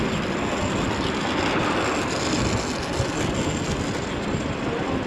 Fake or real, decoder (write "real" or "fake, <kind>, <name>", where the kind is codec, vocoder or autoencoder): real